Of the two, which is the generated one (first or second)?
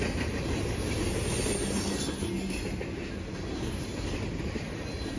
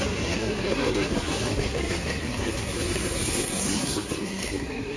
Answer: second